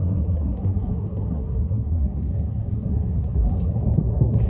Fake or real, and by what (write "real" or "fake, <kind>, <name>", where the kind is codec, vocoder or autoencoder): fake, codec, SNAC